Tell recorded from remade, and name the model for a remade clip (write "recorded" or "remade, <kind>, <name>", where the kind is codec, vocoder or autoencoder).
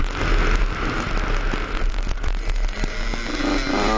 recorded